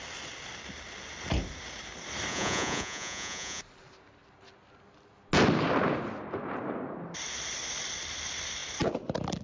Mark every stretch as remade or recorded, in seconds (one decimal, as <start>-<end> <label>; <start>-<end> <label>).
0.0-2.3 recorded; 2.3-3.6 remade; 3.6-9.4 recorded